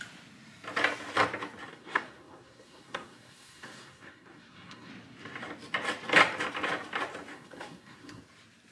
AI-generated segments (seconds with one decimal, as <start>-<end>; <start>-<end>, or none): 1.7-4.9; 7.3-8.2